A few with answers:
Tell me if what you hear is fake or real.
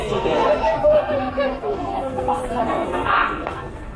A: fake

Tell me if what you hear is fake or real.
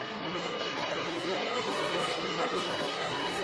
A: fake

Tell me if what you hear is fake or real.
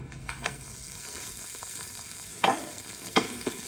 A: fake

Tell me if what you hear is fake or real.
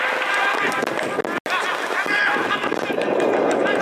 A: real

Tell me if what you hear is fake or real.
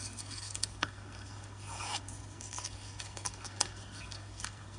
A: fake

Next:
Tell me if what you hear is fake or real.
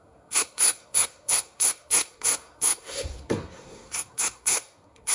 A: fake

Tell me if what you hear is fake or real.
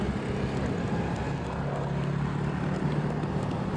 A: real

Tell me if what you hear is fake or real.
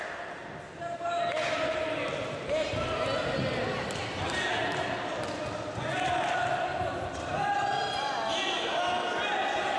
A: real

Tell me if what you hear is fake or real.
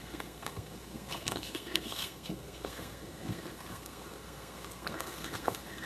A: fake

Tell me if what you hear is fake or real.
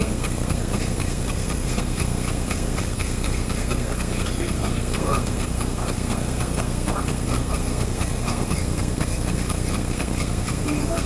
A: fake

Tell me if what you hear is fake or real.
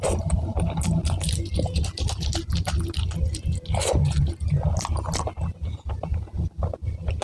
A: real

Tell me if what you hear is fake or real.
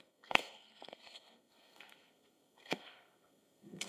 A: fake